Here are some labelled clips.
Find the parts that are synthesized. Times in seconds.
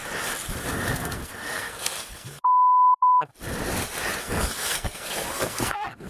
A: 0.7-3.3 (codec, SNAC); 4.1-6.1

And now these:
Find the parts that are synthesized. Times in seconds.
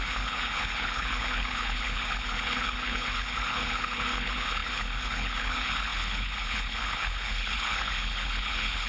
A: 0.0-8.9 (codec, HILCodec)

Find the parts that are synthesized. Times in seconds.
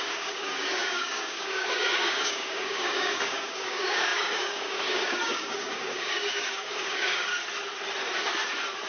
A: 0.0-7.3 (codec, DAC)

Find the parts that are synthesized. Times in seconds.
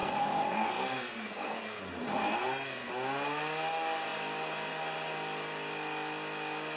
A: 0.0-1.8 (codec, SNAC); 2.2-2.9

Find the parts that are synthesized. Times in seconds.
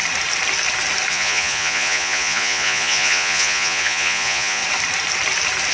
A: 1.1-4.6 (vocoder, Vocos)